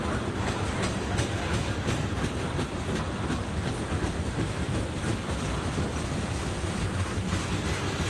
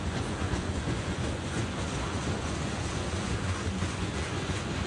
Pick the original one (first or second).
first